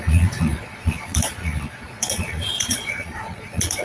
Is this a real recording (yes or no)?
no